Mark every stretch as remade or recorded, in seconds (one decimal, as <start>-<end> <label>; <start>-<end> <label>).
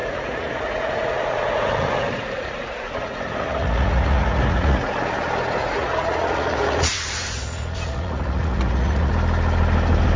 0.0-4.9 remade; 4.9-5.6 recorded; 5.6-9.1 remade; 9.1-10.2 recorded